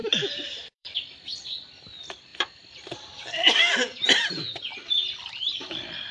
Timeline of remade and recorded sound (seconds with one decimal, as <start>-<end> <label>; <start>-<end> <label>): 0.0-1.0 remade; 1.0-2.3 recorded; 2.3-6.1 remade